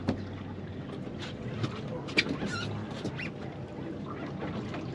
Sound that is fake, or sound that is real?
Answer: real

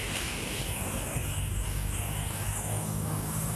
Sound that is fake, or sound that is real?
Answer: fake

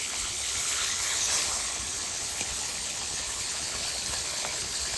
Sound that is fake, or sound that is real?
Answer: fake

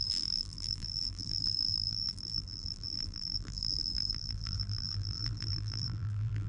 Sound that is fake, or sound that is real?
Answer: fake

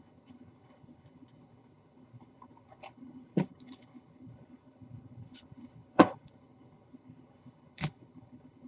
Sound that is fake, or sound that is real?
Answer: fake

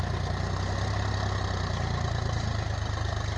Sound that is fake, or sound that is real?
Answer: real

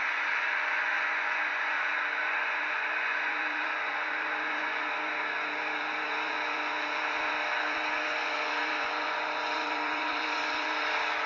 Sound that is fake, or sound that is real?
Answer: fake